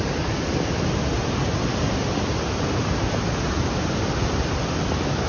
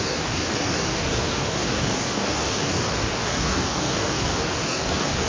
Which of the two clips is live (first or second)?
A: first